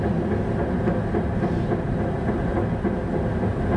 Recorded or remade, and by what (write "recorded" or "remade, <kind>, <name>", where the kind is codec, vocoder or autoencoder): recorded